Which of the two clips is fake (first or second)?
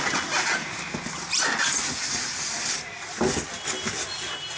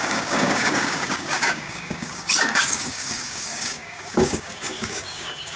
second